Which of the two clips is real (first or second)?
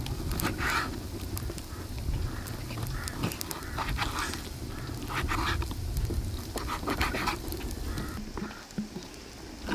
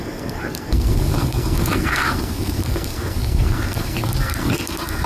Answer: first